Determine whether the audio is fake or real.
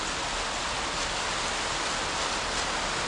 real